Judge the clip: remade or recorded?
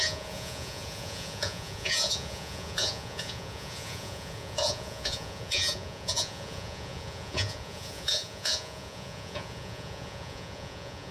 remade